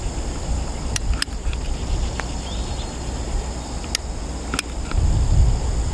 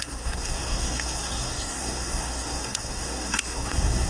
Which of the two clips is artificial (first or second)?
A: second